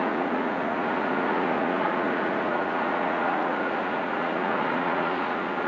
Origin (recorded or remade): remade